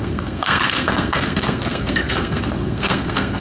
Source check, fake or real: fake